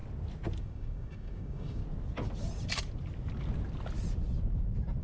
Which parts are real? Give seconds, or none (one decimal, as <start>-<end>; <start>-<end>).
0.0-0.6; 1.8-5.0